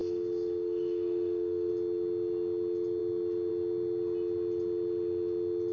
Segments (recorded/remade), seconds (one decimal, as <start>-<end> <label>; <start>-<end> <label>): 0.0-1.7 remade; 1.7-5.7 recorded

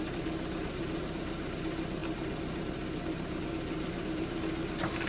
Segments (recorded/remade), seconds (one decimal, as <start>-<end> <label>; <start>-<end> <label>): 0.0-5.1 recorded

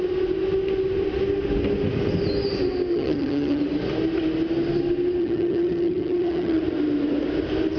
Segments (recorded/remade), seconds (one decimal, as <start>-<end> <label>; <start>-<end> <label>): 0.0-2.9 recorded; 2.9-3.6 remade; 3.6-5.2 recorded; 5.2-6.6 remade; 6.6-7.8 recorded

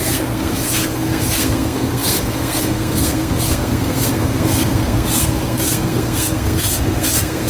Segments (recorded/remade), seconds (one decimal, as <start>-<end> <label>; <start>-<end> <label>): 0.0-7.5 remade